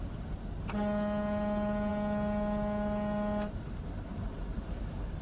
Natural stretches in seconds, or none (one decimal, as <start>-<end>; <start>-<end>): 0.0-5.2